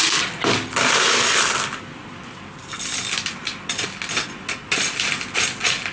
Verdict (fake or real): real